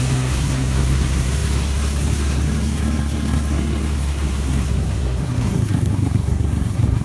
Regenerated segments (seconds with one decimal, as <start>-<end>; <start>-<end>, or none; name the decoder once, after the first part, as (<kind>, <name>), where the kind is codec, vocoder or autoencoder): 0.0-7.0 (codec, SNAC)